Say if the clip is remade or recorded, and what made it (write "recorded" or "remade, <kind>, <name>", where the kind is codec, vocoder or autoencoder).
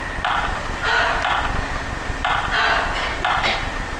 recorded